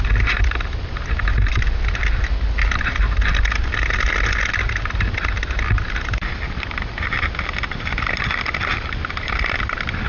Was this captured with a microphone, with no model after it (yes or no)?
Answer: yes